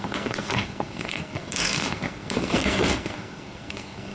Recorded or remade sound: remade